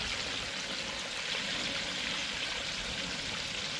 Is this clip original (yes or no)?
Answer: yes